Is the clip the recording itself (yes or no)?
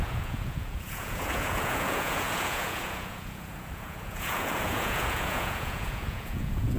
no